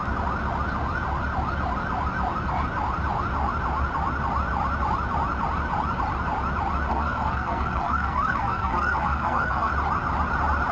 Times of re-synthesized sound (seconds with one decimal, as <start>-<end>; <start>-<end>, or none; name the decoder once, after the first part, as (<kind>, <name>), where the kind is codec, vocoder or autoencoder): 6.9-9.7 (codec, SNAC)